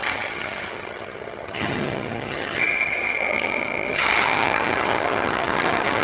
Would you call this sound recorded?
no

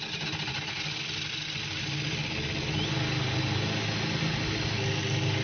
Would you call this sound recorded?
yes